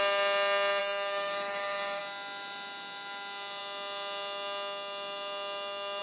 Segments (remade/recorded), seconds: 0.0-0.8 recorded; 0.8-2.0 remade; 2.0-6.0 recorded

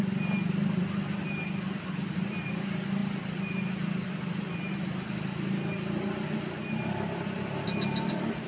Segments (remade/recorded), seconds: 0.0-8.5 recorded